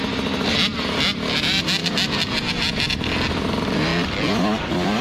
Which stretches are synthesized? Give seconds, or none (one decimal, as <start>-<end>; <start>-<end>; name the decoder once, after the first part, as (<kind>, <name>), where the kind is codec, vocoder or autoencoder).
0.0-3.9 (vocoder, BigVGAN v2)